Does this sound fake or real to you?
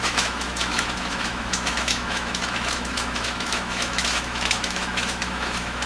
fake